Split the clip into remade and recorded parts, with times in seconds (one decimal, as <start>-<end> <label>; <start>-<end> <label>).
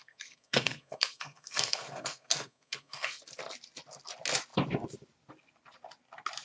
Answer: 0.0-3.2 remade; 3.2-6.4 recorded